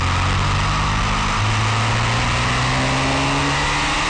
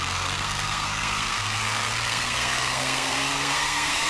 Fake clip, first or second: second